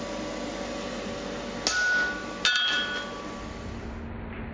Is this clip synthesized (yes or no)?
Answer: no